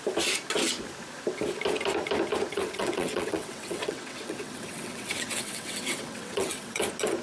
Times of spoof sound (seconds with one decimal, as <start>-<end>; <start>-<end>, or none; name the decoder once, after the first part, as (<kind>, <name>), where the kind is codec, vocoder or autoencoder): 2.5-6.8 (vocoder, WaveNeXt)